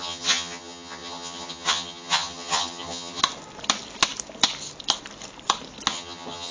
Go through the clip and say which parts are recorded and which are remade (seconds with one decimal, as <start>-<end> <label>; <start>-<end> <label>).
0.0-3.2 remade; 3.2-5.9 recorded; 5.9-6.5 remade